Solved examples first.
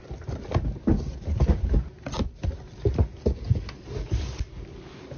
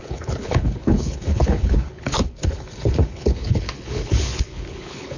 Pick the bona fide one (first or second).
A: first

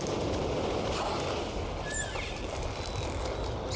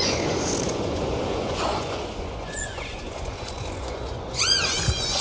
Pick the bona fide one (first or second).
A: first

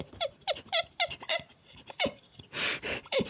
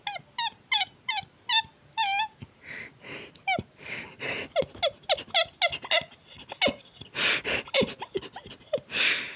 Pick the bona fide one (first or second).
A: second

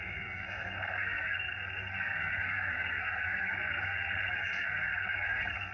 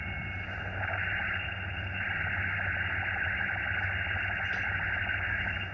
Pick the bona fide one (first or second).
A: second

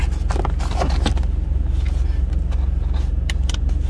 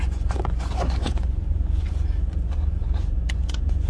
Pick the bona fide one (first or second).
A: first